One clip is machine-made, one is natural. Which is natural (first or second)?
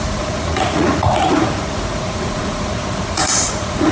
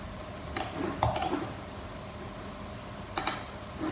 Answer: second